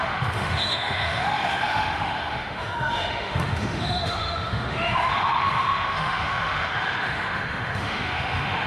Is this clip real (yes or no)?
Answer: no